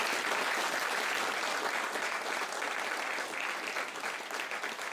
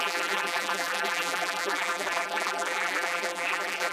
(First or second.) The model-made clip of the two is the second